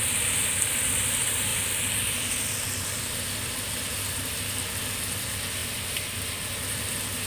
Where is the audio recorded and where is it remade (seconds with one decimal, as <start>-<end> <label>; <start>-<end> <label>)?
0.0-1.5 recorded; 1.5-3.0 remade; 3.0-5.6 recorded; 5.6-6.2 remade; 6.2-7.3 recorded